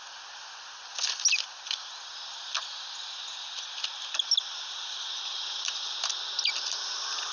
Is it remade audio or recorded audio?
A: recorded